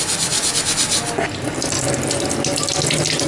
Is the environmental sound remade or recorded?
recorded